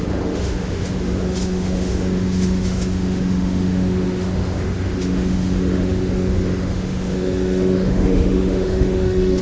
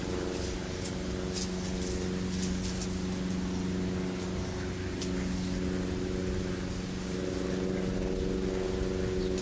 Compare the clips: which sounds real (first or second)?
second